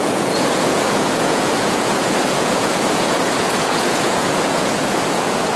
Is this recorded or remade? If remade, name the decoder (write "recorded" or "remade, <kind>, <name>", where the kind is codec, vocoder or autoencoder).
remade, vocoder, Vocos